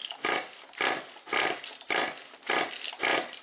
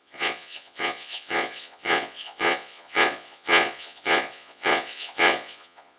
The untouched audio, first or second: first